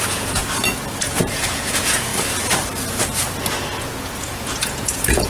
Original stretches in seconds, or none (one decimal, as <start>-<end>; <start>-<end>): 0.4-1.0; 2.1-3.8